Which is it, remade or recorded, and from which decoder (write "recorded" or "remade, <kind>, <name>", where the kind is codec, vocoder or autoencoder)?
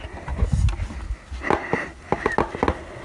recorded